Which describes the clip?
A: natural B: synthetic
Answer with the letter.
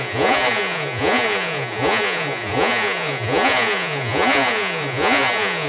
B